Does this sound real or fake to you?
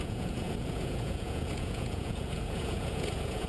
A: fake